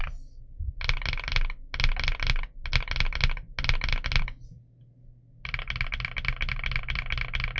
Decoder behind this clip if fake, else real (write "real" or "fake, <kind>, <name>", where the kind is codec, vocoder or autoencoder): real